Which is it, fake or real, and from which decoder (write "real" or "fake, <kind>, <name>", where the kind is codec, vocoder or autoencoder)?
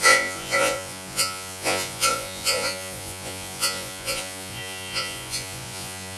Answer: fake, vocoder, Vocos